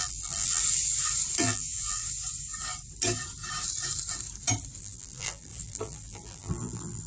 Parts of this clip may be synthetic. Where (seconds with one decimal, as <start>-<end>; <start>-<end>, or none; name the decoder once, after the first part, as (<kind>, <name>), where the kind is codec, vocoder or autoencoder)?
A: 0.0-0.6 (vocoder, BigVGAN v2); 1.4-2.0; 4.8-7.1